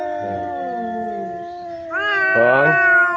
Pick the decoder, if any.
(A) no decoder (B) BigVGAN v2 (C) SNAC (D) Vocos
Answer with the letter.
A